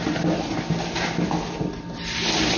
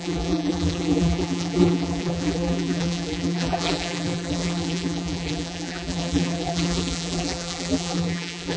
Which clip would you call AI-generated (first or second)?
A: second